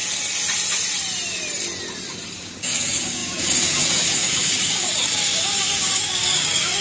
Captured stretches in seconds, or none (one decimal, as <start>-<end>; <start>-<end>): 0.0-2.4